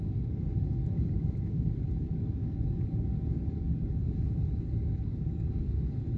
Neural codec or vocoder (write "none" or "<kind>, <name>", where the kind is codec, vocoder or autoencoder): codec, DAC